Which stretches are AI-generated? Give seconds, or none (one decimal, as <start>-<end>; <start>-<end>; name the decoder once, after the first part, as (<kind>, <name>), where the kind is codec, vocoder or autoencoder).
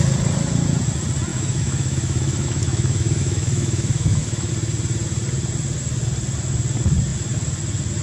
1.3-4.5 (autoencoder, DAC-VAE)